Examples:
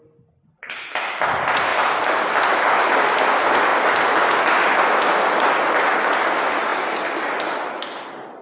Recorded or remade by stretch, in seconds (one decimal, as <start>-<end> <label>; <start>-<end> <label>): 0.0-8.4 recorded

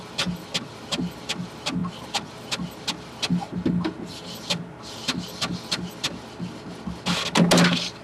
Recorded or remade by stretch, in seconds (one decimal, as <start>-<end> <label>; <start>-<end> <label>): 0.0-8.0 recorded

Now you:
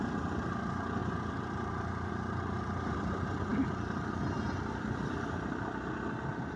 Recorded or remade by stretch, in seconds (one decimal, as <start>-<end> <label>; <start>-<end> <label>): 0.0-6.6 recorded

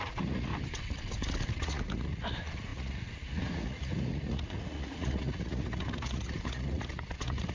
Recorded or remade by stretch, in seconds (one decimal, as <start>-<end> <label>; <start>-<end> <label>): 0.0-0.5 remade; 0.5-1.6 recorded; 1.6-7.5 remade

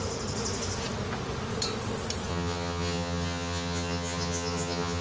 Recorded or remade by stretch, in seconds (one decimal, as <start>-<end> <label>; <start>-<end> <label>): 0.0-2.3 recorded; 2.3-5.0 remade